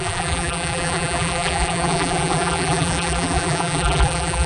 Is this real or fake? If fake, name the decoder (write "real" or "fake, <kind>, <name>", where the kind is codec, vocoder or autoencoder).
fake, vocoder, BigVGAN v2